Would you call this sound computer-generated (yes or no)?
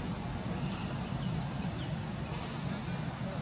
no